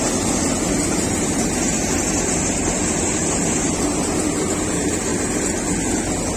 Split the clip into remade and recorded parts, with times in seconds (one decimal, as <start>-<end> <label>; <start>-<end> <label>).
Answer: 0.0-6.4 recorded